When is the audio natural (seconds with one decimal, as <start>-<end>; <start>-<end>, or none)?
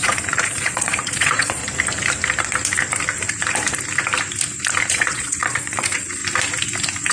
1.6-4.9; 6.2-7.1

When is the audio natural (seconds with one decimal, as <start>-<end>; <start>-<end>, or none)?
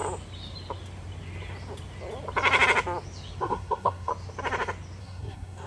0.0-3.4; 4.1-5.0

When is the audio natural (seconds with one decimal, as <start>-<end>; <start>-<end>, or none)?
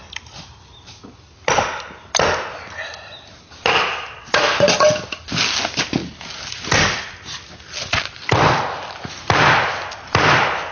0.0-10.7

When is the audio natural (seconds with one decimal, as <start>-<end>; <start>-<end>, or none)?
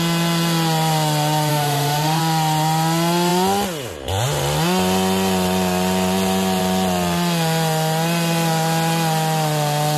0.0-1.5; 2.2-10.0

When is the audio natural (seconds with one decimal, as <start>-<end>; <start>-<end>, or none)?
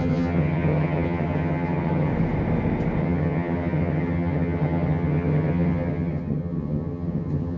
2.1-3.0